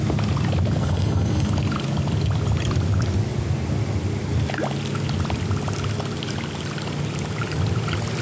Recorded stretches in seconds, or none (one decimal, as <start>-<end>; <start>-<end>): 0.0-0.8; 1.5-8.2